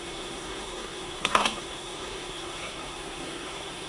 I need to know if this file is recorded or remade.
remade